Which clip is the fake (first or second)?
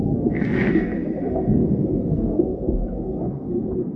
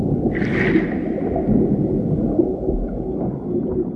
first